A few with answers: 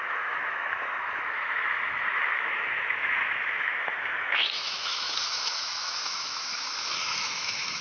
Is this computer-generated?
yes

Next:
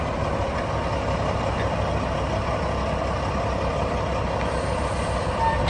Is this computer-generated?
no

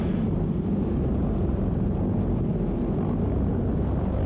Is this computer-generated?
no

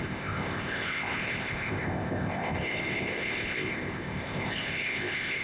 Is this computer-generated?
yes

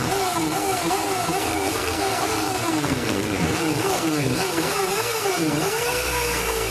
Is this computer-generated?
yes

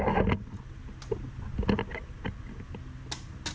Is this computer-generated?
no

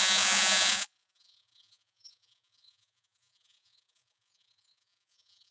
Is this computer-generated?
yes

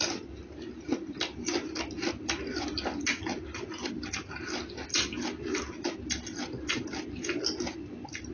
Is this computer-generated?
no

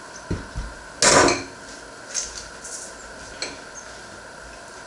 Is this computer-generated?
no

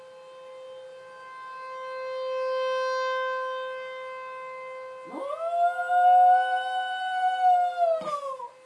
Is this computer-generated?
no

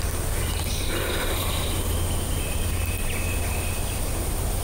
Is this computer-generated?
no